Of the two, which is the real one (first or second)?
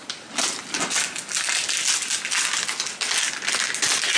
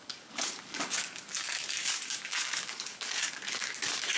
first